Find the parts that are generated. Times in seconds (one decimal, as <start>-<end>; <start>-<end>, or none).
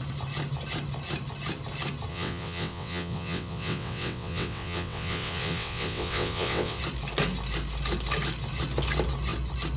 2.1-6.8